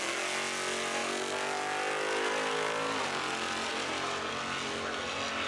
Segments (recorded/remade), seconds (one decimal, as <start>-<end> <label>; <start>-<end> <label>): 0.0-5.5 recorded